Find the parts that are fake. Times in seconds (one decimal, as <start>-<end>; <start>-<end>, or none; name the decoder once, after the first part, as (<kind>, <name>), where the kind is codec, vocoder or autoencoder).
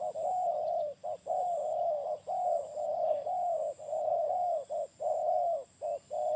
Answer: 0.0-6.4 (vocoder, BigVGAN v2)